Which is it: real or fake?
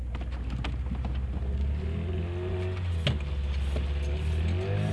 real